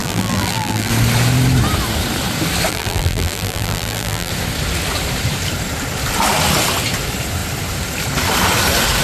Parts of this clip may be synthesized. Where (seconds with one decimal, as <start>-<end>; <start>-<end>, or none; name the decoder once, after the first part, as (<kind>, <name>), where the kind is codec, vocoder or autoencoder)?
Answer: 0.0-0.9 (vocoder, BigVGAN v2); 2.7-4.3